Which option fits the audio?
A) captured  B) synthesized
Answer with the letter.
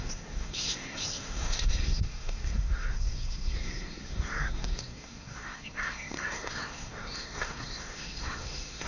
B